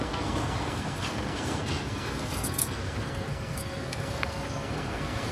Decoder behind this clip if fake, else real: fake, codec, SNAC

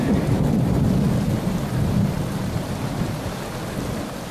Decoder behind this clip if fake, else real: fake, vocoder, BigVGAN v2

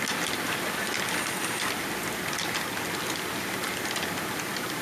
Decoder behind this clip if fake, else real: real